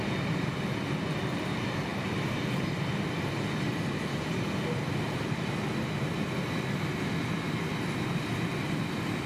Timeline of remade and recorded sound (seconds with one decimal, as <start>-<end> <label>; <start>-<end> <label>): 0.0-9.3 recorded